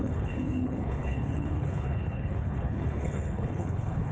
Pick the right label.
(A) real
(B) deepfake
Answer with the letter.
B